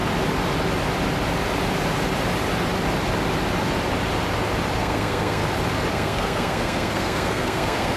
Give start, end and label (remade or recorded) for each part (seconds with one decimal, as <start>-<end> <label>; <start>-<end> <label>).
0.0-4.8 recorded; 4.8-5.4 remade; 5.4-5.9 recorded; 5.9-8.0 remade